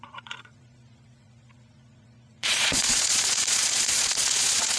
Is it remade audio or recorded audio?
remade